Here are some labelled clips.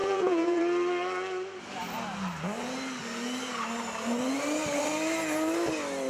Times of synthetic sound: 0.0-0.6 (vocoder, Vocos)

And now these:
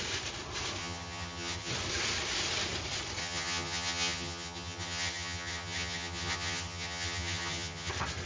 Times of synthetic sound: 0.8-1.7 (vocoder, HiFi-GAN); 3.2-7.9